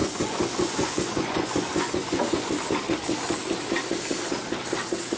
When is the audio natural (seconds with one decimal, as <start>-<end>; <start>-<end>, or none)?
2.5-5.2